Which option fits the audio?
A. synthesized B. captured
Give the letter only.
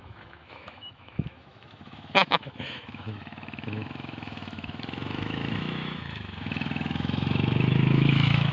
A